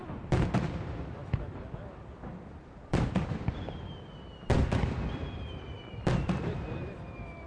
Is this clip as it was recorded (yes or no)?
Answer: no